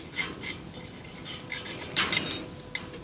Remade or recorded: recorded